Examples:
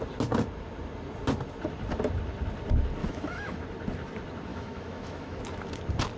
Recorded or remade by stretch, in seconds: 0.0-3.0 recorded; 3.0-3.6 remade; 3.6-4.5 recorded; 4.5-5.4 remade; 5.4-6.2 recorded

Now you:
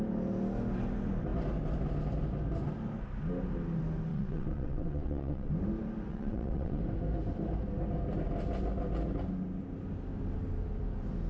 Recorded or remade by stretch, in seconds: 0.0-4.1 recorded; 4.1-5.5 remade; 5.5-6.1 recorded; 6.1-6.8 remade; 6.8-11.3 recorded

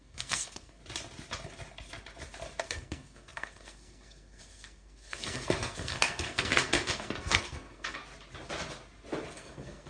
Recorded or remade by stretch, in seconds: 0.0-0.8 remade; 0.8-2.6 recorded; 2.6-8.0 remade; 8.0-9.3 recorded; 9.3-9.9 remade

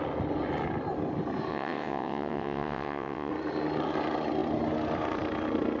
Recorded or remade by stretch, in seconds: 0.0-1.5 recorded; 1.5-3.3 remade; 3.3-5.8 recorded